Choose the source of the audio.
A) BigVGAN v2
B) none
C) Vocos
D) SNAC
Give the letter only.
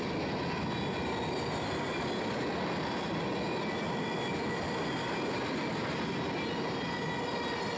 B